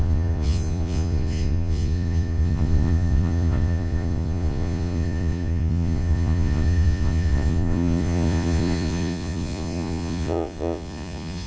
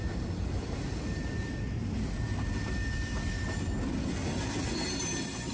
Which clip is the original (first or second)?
second